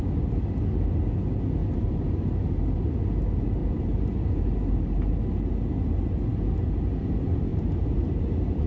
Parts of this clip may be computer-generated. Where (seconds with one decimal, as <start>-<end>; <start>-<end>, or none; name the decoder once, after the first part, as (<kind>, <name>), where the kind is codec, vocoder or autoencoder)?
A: 1.6-2.6 (vocoder, BigVGAN v2); 3.6-5.1; 7.5-8.7